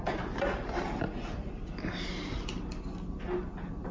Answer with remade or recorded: recorded